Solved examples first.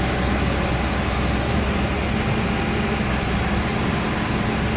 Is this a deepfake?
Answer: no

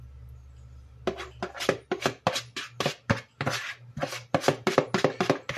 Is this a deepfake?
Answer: no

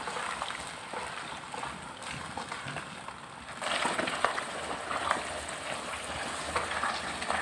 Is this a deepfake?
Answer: no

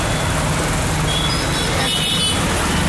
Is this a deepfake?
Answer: no